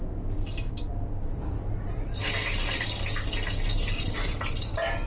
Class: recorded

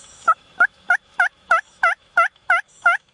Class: remade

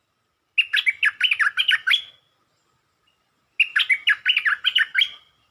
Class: recorded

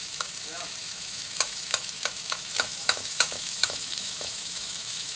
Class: remade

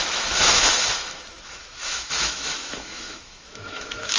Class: remade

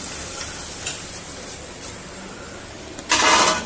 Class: recorded